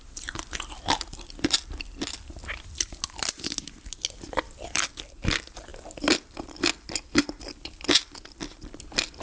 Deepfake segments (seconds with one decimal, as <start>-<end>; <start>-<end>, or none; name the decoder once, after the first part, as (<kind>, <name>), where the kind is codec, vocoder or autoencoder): none

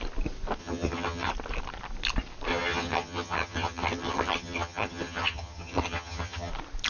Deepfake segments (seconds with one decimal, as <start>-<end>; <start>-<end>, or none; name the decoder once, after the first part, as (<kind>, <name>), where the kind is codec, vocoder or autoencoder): 0.6-1.3 (vocoder, HiFi-GAN); 2.5-6.5

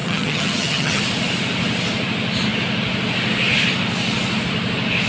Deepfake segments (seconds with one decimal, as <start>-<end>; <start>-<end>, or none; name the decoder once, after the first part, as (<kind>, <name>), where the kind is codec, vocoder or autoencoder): 0.0-1.0 (vocoder, HiFi-GAN)

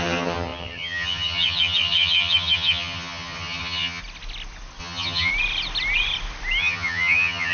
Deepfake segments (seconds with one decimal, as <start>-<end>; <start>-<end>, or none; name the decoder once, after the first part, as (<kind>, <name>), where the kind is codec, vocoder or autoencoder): 0.0-4.0 (vocoder, HiFi-GAN); 4.8-5.3; 6.6-7.5

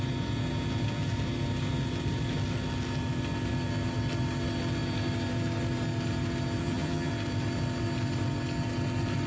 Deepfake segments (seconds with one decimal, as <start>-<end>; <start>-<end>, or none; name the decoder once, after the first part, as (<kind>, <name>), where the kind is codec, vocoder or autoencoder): 6.6-7.1 (vocoder, HiFi-GAN)

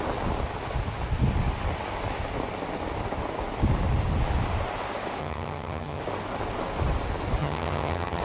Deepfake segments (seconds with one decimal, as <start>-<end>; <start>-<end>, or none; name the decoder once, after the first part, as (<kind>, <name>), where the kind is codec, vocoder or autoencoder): 5.2-6.0 (vocoder, HiFi-GAN); 7.4-8.2

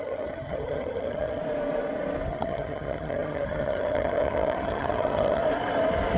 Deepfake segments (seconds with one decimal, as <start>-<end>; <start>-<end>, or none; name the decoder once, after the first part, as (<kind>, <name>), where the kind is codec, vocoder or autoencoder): 0.0-1.4 (vocoder, HiFi-GAN); 2.3-5.4

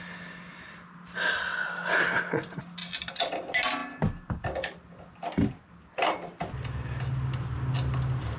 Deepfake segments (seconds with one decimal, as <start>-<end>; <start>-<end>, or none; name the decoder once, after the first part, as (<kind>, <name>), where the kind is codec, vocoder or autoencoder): none